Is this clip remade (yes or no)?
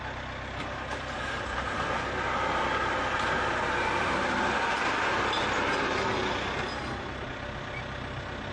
no